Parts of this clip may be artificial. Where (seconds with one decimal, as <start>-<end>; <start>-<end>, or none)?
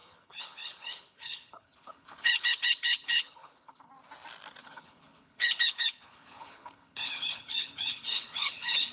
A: 0.0-3.9; 4.6-8.9